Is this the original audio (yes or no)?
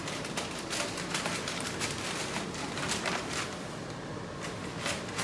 no